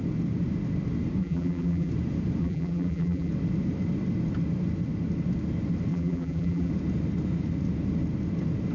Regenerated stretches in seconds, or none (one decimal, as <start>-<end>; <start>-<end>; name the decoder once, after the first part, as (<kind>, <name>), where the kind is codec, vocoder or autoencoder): 1.2-1.9 (vocoder, BigVGAN v2); 2.4-3.3; 5.9-6.7